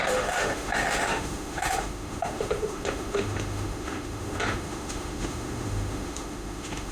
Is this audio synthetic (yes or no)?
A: yes